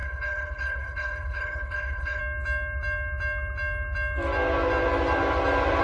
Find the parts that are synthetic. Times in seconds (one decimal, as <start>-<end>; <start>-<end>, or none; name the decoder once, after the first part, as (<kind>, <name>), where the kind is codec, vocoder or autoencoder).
0.0-2.2 (codec, HILCodec)